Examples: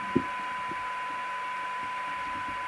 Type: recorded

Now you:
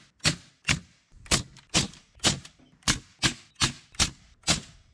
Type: recorded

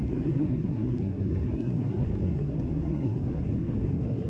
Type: remade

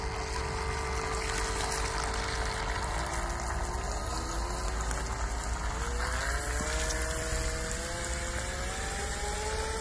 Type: recorded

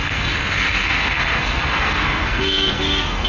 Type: remade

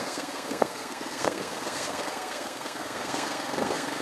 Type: remade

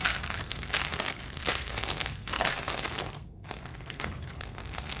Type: remade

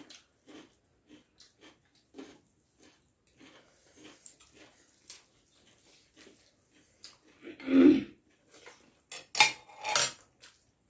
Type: recorded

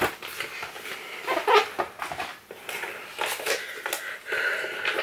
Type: recorded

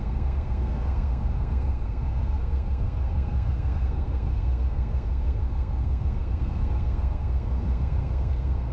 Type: remade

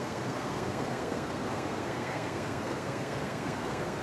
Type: remade